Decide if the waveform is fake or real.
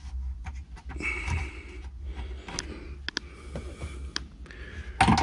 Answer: real